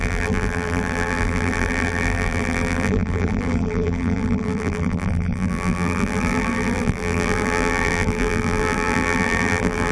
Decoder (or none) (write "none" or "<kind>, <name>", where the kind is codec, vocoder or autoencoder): vocoder, BigVGAN v2